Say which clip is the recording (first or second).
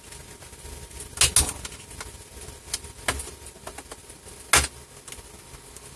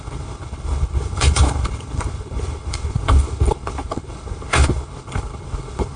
first